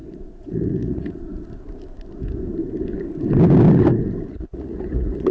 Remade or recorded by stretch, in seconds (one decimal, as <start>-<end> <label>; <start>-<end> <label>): 0.0-1.2 remade; 1.2-4.3 recorded; 4.3-5.3 remade